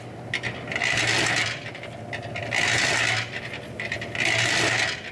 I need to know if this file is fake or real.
real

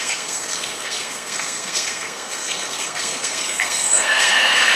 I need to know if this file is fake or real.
fake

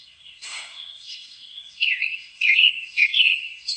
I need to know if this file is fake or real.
fake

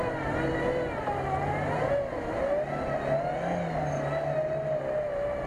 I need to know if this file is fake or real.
real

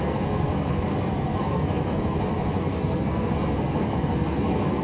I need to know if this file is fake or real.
fake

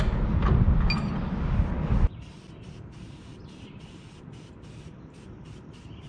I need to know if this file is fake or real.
real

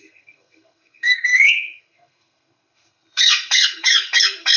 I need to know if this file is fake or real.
fake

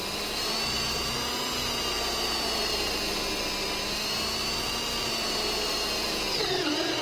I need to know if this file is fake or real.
real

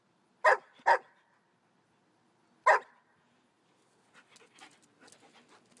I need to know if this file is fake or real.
real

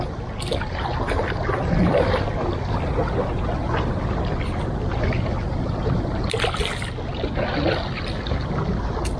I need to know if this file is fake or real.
real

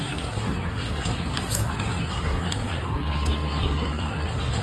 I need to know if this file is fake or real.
fake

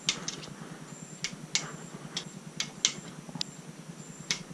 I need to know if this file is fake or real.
real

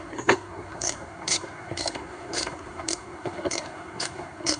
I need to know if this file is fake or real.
fake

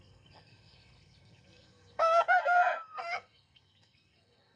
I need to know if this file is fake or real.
fake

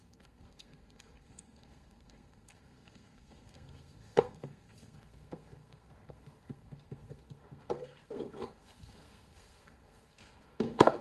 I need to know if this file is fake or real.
fake